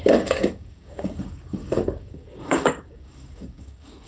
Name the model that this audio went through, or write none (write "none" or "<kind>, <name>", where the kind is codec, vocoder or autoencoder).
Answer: codec, DAC